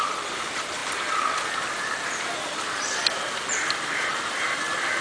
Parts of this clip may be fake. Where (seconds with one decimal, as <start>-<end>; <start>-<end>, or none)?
none